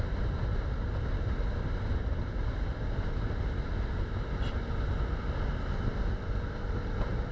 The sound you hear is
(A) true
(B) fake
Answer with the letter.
A